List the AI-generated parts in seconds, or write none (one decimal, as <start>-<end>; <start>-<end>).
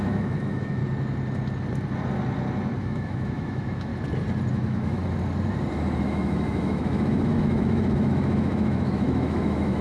0.0-0.8; 2.8-3.9; 4.5-5.0; 6.0-9.8